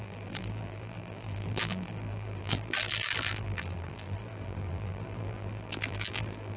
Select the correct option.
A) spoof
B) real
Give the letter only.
A